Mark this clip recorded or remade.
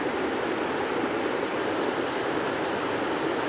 recorded